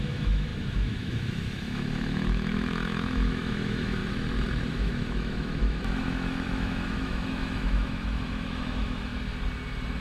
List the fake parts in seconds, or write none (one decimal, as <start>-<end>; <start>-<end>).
0.0-4.0; 4.7-9.1